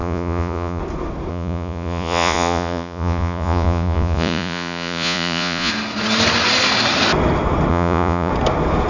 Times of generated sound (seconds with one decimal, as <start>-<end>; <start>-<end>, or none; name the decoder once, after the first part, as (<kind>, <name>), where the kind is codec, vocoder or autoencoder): 0.0-0.8 (vocoder, Vocos); 1.3-5.7; 7.7-8.3